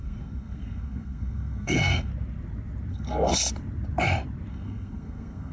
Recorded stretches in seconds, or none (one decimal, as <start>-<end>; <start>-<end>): 2.1-2.9; 3.3-4.5